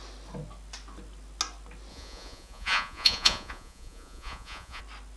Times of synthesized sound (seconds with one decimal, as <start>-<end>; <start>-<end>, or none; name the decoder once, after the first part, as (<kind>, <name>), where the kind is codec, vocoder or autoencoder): 1.9-4.8 (vocoder, Vocos)